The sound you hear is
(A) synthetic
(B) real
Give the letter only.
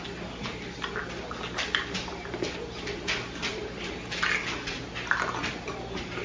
B